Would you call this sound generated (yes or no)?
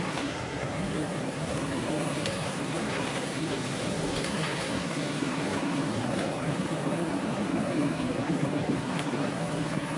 yes